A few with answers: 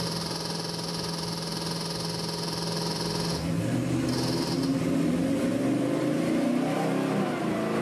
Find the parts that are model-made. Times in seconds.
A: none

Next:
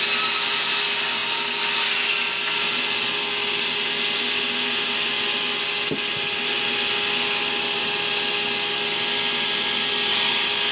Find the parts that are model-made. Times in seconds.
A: none

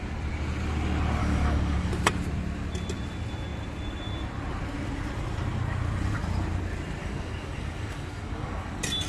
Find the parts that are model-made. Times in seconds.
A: 1.2-1.9 (codec, DAC); 7.0-8.7

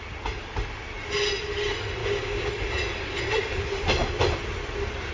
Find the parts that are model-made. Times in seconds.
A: 2.0-2.5 (codec, DAC)